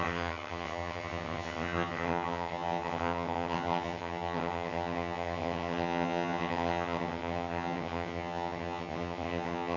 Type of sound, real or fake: fake